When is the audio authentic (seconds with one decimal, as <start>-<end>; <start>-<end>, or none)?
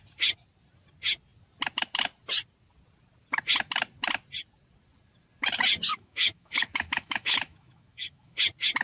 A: 0.0-5.9; 8.4-8.8